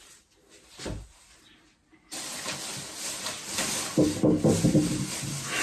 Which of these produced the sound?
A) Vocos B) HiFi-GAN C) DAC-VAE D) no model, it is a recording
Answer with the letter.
D